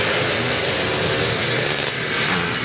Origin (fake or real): real